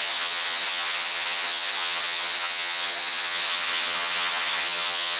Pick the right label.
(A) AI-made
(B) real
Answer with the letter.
A